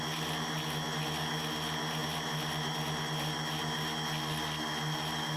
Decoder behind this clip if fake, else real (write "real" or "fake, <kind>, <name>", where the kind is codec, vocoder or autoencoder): real